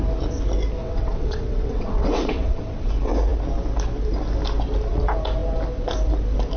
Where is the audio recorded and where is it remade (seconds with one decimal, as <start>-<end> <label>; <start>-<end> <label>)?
0.0-0.8 recorded; 0.8-2.9 remade; 2.9-6.6 recorded